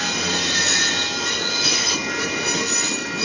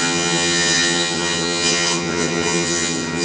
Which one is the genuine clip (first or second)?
first